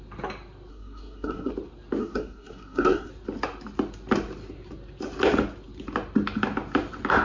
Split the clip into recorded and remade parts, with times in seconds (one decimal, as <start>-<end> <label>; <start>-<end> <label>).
0.0-0.7 recorded; 0.7-1.5 remade; 1.5-2.0 recorded; 2.0-3.1 remade; 3.1-7.2 recorded